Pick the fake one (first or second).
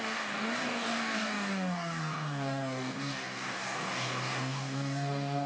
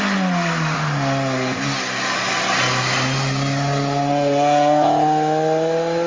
first